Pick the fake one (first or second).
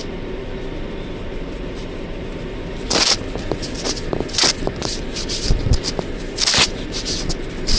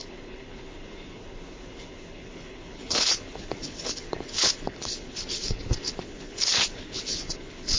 second